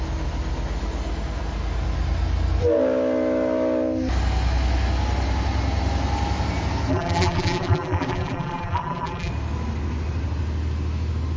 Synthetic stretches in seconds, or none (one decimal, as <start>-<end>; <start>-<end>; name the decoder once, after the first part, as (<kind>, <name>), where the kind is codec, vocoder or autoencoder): 6.9-9.3 (vocoder, BigVGAN v2)

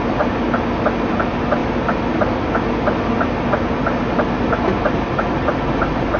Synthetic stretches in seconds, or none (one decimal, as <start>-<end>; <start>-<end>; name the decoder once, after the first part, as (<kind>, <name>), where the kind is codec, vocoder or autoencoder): none

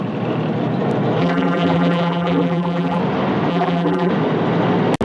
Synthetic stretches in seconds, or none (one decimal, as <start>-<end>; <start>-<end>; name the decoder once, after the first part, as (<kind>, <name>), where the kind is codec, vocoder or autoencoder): 1.2-3.0 (vocoder, BigVGAN v2); 3.5-4.1

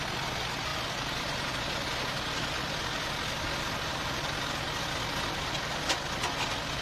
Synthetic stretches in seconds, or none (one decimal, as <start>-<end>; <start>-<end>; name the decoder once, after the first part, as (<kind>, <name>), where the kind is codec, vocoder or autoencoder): 0.7-1.2 (vocoder, BigVGAN v2)

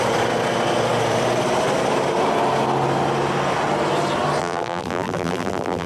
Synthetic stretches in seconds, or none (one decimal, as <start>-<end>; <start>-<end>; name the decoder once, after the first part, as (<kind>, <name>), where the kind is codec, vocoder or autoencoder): 4.4-5.9 (vocoder, BigVGAN v2)

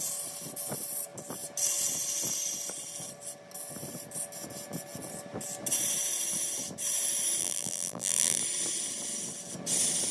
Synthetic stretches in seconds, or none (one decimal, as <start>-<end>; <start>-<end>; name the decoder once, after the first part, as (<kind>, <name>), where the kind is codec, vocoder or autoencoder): 7.4-8.4 (vocoder, BigVGAN v2)

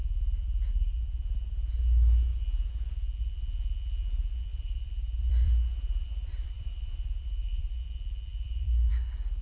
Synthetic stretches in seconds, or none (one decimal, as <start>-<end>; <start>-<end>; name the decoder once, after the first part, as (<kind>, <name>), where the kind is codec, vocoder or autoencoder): 4.5-7.9 (vocoder, BigVGAN v2); 8.3-8.9